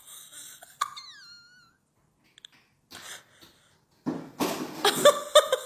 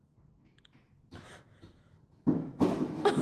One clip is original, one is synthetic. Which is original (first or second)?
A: first